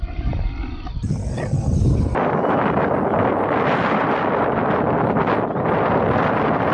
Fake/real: real